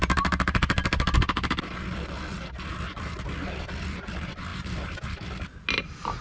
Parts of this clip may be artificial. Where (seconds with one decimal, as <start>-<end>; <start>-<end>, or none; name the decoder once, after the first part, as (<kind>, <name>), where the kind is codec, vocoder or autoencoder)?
none